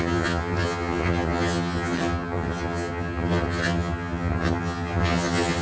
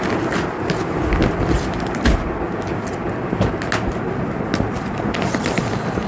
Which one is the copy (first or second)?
first